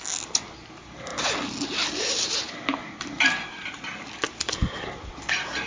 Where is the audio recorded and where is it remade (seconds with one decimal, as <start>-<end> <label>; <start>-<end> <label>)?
0.0-1.1 recorded; 1.1-4.5 remade; 4.5-5.7 recorded